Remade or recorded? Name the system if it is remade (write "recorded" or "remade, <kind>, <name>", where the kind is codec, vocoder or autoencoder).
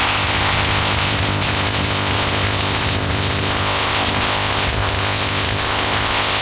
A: remade, codec, ZipCodec